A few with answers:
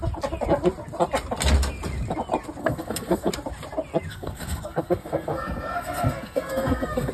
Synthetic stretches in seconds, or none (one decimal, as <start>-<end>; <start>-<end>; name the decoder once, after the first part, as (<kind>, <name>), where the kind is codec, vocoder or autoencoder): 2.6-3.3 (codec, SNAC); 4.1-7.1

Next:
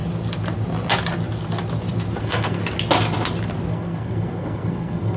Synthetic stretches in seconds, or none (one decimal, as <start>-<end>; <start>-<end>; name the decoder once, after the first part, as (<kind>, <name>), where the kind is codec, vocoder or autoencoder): 2.2-2.6 (codec, SNAC); 3.7-5.2

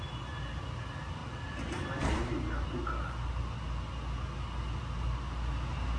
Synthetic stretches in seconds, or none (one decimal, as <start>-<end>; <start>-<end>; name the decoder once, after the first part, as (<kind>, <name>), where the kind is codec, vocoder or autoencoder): none

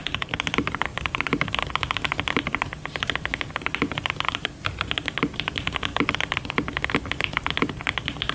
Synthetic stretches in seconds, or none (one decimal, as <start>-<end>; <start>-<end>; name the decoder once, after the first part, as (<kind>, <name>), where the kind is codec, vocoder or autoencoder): none

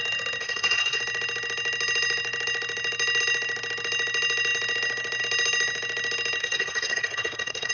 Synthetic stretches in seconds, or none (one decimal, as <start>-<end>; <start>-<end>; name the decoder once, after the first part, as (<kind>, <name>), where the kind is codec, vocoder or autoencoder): 0.4-1.0 (codec, SNAC); 6.4-7.7

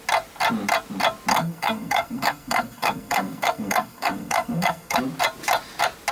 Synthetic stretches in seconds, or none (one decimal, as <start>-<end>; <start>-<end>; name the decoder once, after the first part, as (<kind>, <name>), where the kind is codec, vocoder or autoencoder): 1.3-5.0 (codec, SNAC)

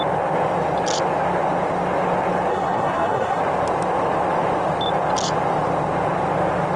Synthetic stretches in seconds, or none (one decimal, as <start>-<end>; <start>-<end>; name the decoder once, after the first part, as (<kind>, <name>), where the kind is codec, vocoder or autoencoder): 2.5-3.4 (codec, SNAC)

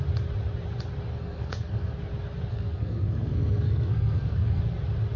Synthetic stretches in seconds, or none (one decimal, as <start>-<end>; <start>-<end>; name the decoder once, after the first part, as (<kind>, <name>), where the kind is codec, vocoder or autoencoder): 1.1-2.0 (codec, SNAC); 2.5-4.6